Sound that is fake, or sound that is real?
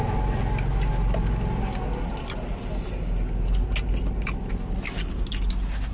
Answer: real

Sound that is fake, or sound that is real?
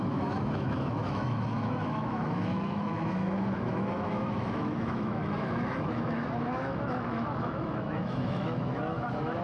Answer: fake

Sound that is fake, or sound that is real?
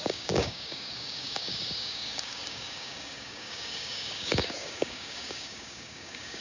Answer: fake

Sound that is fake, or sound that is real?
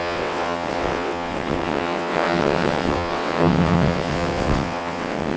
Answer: fake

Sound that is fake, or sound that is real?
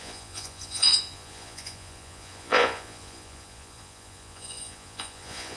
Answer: fake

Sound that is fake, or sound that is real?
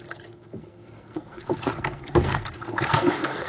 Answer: fake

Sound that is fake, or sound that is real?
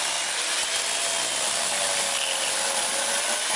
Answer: real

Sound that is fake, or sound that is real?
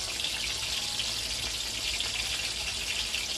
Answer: real